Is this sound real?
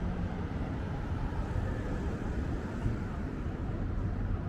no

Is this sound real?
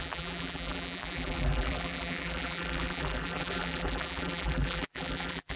no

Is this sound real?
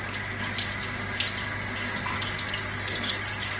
yes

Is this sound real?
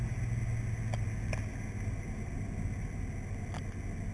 yes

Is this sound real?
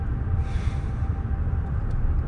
yes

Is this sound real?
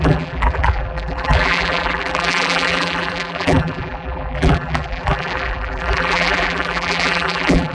no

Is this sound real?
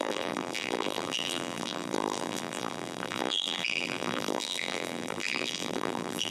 no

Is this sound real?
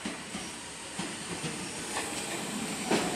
yes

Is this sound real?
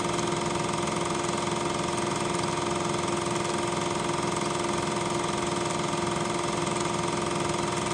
yes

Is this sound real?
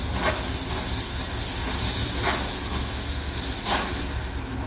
yes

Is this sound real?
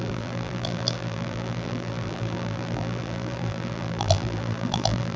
no